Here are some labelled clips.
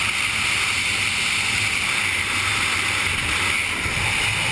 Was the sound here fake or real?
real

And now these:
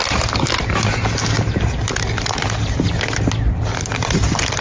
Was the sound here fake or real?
real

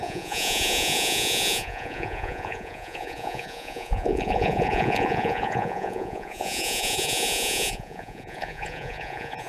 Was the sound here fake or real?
fake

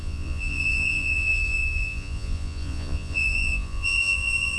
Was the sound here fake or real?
fake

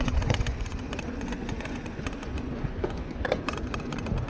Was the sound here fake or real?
fake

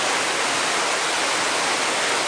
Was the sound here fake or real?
real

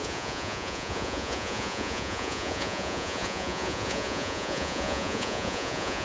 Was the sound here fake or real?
fake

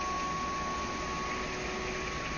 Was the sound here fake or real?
real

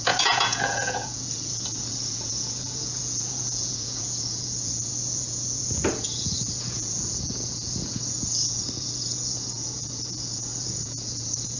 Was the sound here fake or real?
fake